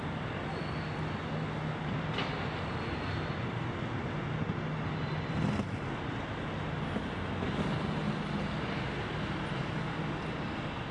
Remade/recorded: recorded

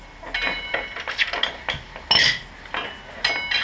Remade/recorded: recorded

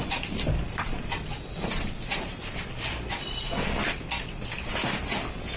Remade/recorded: recorded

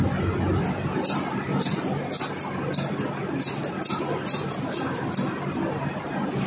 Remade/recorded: recorded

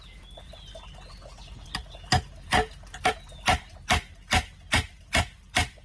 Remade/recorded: recorded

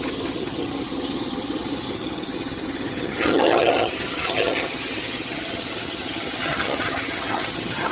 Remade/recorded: remade